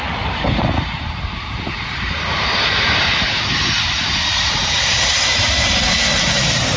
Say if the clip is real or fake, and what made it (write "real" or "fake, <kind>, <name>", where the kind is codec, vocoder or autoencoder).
fake, vocoder, BigVGAN v2